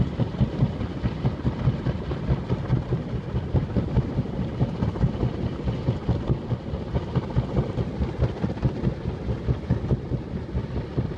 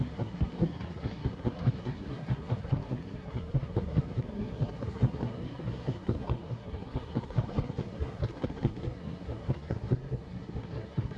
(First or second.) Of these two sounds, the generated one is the second